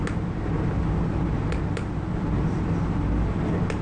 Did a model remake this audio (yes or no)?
no